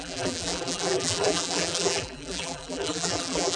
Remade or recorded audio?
remade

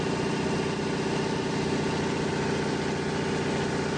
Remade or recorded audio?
recorded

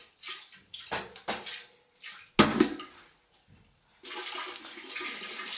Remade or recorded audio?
recorded